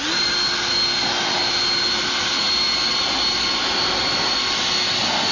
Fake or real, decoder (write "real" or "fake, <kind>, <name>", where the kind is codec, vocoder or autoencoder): real